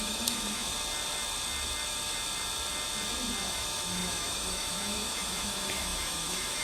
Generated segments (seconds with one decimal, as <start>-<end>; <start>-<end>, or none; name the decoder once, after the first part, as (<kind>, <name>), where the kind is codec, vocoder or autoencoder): 0.0-0.7 (autoencoder, DAC-VAE); 3.5-6.6

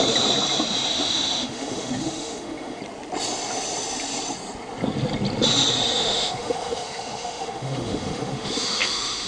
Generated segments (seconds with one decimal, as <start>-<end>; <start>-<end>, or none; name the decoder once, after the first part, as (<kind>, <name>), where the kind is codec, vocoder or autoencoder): 0.9-2.8 (autoencoder, DAC-VAE); 6.0-9.3

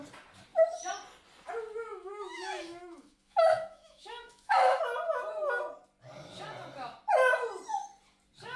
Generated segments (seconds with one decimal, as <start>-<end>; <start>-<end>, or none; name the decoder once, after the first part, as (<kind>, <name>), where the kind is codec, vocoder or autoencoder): 1.9-4.8 (autoencoder, DAC-VAE)

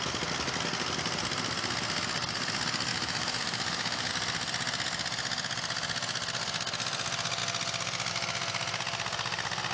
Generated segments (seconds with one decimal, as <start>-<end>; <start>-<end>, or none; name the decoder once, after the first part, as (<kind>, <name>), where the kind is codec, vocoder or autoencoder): 2.9-4.1 (autoencoder, DAC-VAE)

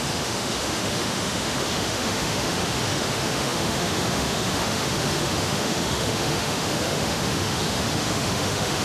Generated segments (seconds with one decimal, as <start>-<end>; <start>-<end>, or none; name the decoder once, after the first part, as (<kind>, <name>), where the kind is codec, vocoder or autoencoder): 0.0-8.8 (autoencoder, DAC-VAE)

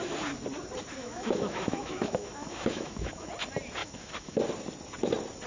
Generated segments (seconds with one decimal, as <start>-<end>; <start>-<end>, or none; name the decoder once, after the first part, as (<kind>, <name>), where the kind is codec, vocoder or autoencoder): 1.0-3.3 (autoencoder, DAC-VAE); 3.8-4.4

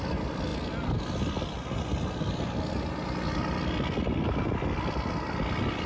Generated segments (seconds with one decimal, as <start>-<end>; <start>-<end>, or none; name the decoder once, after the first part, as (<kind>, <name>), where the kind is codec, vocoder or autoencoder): none